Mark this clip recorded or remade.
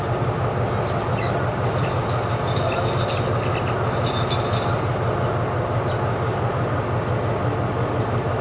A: recorded